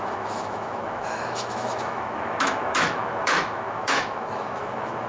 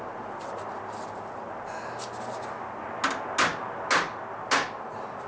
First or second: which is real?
second